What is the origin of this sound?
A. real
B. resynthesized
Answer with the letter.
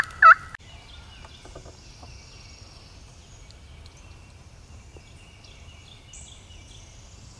A